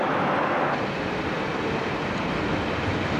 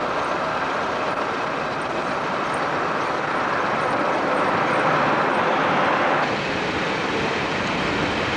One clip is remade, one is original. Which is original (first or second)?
first